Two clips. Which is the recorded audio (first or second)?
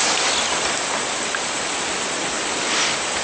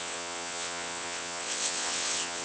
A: first